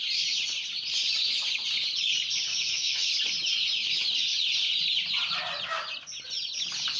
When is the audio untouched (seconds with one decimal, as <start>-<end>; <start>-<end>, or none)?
0.0-2.5; 3.1-7.0

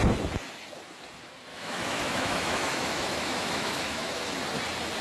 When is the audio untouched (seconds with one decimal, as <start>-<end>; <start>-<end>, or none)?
0.0-1.5; 4.2-5.0

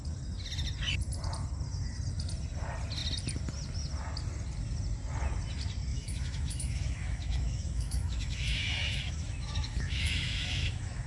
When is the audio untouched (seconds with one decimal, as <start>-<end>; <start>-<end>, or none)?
0.0-5.9

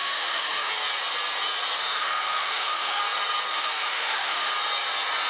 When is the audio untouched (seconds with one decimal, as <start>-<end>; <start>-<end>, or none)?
0.7-1.8; 3.0-3.5; 4.5-5.3

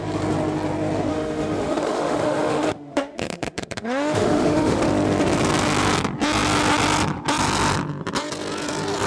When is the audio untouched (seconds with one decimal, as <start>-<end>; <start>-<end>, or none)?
0.0-1.1; 4.8-9.1

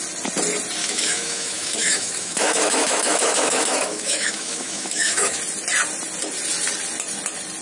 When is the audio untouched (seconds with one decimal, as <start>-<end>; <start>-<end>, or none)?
0.0-0.8; 5.4-7.6

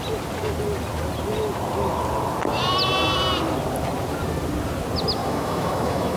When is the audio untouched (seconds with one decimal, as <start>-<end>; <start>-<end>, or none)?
0.0-5.2